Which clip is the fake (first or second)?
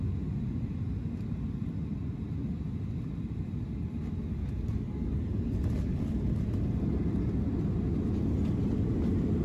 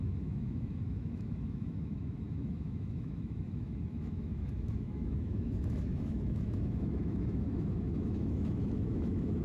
second